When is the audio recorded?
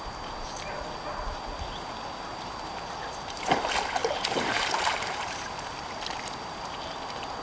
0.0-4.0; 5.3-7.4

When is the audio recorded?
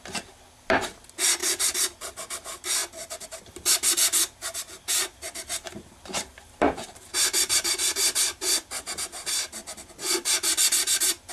0.0-1.4; 2.0-5.0; 8.9-11.3